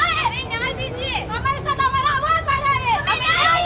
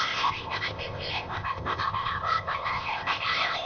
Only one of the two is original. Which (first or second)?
first